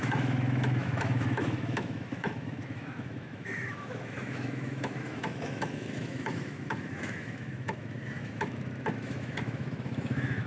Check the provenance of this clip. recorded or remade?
remade